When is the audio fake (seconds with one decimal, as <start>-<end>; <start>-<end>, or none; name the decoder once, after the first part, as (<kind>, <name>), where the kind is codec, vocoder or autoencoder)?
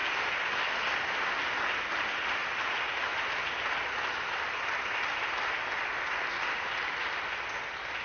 none